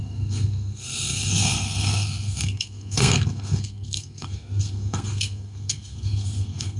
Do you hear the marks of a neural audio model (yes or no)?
yes